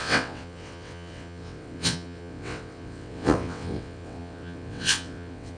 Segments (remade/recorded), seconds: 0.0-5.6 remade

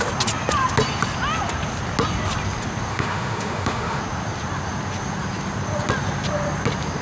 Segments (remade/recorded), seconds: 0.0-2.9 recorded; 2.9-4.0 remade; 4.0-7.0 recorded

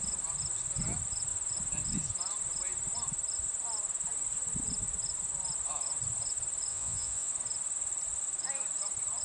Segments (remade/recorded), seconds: 0.0-6.7 recorded; 6.7-7.3 remade; 7.3-9.2 recorded

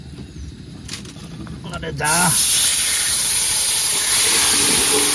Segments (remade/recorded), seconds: 0.0-2.7 recorded; 2.7-4.1 remade; 4.1-5.1 recorded

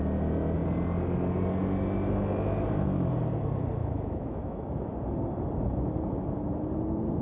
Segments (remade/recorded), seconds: 0.0-3.8 recorded; 3.8-4.7 remade; 4.7-7.2 recorded

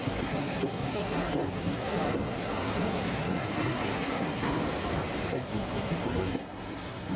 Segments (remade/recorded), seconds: 0.0-4.6 remade; 4.6-5.3 recorded; 5.3-7.2 remade